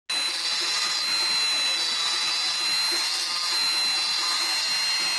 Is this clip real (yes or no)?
yes